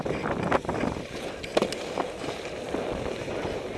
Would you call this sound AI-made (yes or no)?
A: no